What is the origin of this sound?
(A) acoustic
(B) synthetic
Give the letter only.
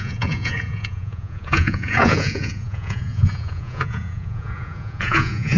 B